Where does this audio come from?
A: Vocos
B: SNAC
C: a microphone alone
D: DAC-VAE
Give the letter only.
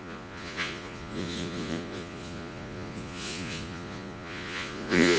A